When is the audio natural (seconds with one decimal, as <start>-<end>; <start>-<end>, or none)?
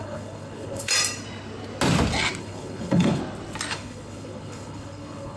0.9-2.4; 3.2-3.7